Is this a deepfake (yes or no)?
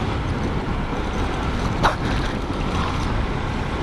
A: no